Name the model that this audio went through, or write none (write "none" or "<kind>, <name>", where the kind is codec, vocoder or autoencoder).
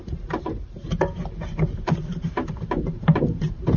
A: vocoder, BigVGAN v2